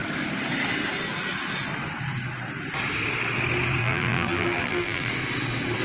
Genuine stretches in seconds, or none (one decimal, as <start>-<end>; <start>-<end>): 0.0-3.8; 5.1-5.8